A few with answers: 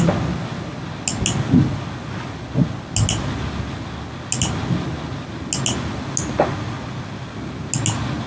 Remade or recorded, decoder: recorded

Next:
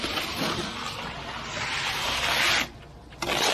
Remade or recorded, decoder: recorded